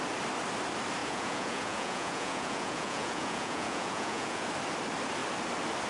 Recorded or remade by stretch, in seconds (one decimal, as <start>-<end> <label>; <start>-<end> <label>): 0.0-1.0 recorded; 1.0-4.5 remade; 4.5-5.9 recorded